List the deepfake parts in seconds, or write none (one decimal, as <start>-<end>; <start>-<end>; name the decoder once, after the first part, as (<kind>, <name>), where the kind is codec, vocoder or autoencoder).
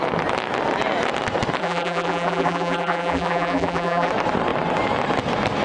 1.6-4.1 (vocoder, BigVGAN v2)